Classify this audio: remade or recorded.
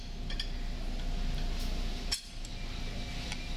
recorded